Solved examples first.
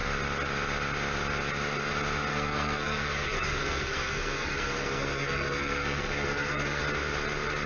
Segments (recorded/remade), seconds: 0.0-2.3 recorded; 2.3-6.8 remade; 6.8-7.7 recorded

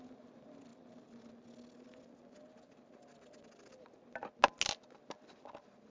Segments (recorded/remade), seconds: 0.0-5.9 recorded

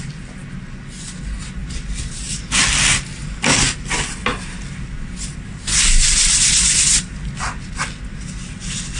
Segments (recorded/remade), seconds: 0.0-9.0 recorded

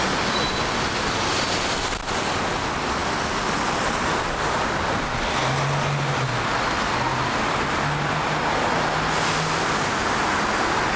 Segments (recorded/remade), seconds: 0.0-11.0 recorded

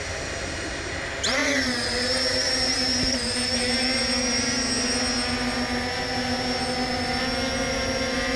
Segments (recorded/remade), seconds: 0.0-8.4 recorded

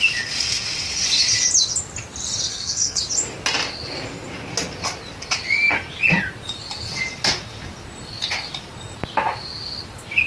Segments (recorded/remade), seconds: 0.0-2.5 recorded; 2.5-3.0 remade; 3.0-10.3 recorded